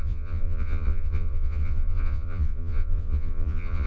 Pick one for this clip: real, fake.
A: fake